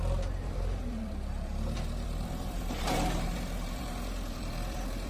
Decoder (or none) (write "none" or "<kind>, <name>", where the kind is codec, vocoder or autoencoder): vocoder, BigVGAN v2